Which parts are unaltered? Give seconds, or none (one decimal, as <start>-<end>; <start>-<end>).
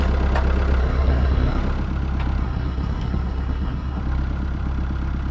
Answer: 0.0-0.8; 1.6-2.4; 4.0-5.3